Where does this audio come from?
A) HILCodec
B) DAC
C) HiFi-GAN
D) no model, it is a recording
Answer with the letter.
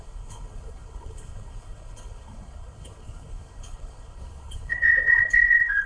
A